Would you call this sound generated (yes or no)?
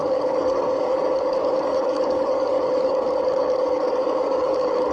yes